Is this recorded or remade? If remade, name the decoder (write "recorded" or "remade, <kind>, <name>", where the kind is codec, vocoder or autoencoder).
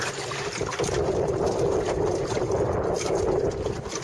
recorded